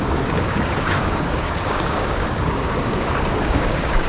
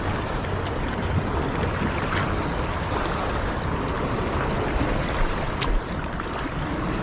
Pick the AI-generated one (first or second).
first